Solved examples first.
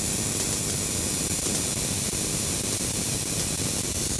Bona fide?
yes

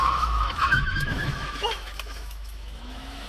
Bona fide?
no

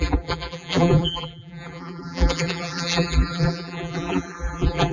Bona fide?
no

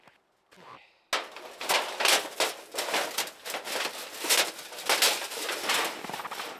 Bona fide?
yes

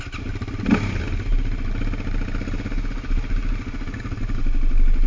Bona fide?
yes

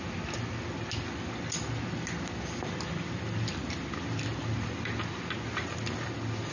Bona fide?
yes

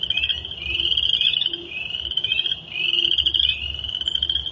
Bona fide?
yes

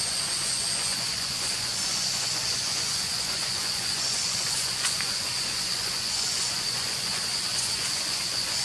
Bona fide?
no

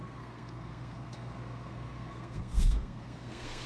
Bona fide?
no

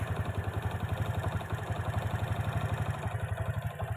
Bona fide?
yes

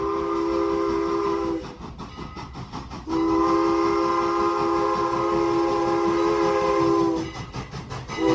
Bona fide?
yes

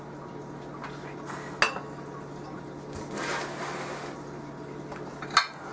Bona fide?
yes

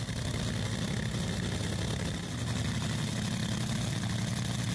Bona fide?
yes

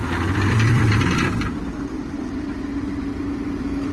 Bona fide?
no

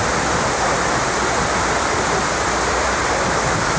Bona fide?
no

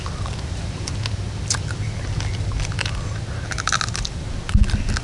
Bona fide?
yes